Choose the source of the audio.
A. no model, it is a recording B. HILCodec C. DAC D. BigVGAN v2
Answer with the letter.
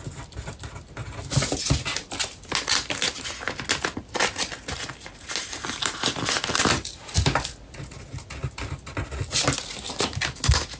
A